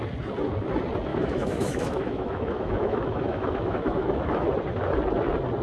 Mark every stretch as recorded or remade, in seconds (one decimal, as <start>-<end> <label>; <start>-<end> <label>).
0.0-1.1 recorded; 1.1-4.5 remade; 4.5-5.6 recorded